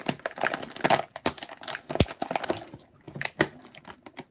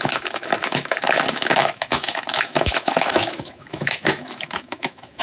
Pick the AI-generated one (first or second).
second